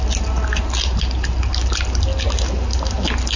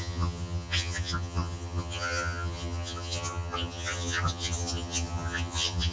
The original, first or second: first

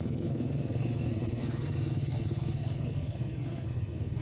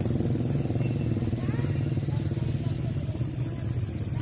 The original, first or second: second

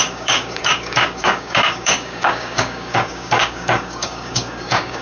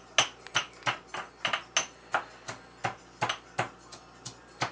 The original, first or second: second